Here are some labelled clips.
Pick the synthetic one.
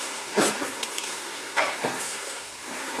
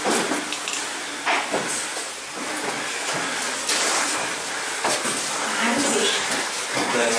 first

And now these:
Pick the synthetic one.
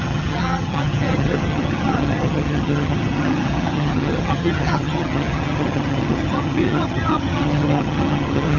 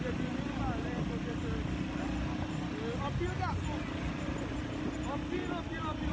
first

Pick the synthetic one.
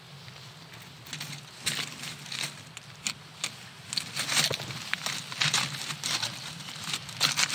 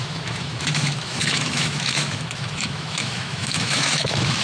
second